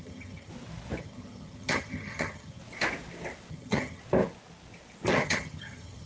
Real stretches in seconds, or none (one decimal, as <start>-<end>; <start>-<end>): 0.5-1.0; 2.6-3.5; 4.0-5.1